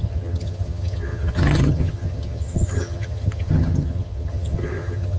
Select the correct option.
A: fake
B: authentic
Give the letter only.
A